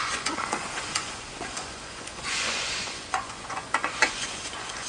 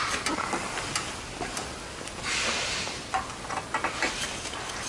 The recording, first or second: second